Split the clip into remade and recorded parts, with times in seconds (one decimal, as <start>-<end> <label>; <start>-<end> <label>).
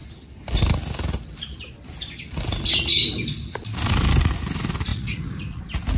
0.0-4.9 recorded; 4.9-5.6 remade; 5.6-6.0 recorded